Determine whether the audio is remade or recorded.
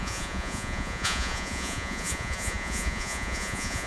remade